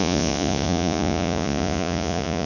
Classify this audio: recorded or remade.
remade